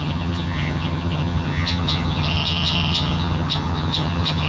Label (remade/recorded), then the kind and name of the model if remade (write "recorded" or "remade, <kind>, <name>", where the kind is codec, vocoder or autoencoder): remade, vocoder, HiFi-GAN